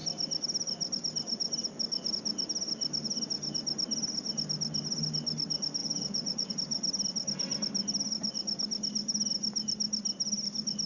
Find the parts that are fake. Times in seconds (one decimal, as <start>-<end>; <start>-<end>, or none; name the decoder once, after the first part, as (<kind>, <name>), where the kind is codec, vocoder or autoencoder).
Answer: 5.8-6.5 (vocoder, Vocos)